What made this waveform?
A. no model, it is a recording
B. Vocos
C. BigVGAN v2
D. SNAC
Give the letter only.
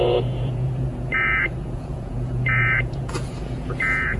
B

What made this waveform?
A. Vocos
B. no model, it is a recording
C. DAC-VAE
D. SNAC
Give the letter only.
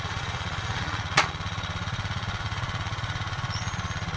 A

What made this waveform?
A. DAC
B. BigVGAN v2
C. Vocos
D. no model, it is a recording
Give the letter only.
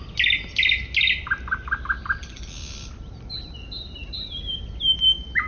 D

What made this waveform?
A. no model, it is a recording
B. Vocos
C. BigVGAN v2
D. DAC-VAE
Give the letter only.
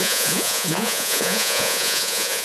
B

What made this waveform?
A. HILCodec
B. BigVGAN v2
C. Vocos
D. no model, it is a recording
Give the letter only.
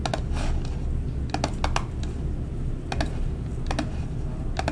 D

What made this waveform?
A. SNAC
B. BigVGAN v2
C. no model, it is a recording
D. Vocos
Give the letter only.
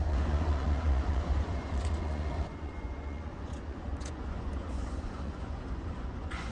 D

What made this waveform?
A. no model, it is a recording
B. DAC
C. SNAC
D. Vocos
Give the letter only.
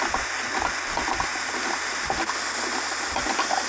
A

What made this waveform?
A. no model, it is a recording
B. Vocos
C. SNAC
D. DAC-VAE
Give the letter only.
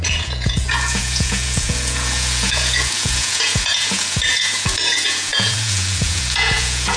B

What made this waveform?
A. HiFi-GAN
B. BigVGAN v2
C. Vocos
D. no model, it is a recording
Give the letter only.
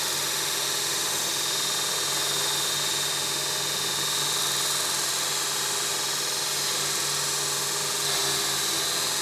D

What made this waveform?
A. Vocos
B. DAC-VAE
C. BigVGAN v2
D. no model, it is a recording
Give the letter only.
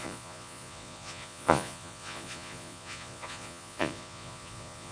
A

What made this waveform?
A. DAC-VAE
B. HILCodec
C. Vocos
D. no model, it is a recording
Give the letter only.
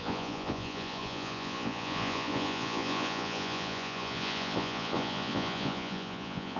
C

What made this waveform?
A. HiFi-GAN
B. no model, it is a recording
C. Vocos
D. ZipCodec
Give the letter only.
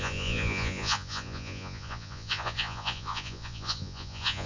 C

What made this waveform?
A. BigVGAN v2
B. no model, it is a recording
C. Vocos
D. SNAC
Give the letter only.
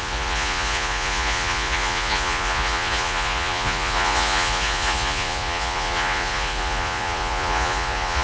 C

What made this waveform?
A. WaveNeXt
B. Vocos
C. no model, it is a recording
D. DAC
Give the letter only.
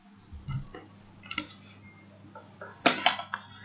C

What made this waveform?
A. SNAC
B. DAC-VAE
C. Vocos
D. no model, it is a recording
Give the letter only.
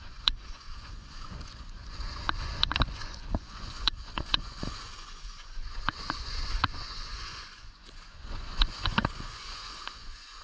C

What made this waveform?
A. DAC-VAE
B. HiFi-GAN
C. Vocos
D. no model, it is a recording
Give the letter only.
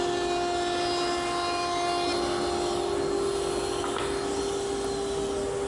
D